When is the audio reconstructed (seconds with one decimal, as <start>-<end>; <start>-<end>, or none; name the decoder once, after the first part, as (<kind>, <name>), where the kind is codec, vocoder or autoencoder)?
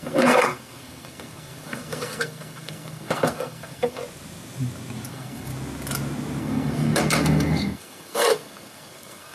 0.0-4.0 (codec, SNAC); 5.1-5.5; 6.4-9.3